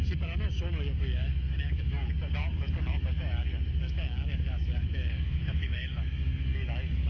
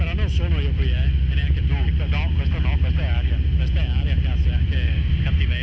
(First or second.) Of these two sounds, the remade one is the first